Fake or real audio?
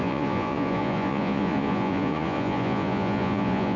fake